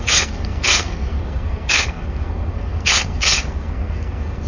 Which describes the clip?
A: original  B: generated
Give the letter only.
B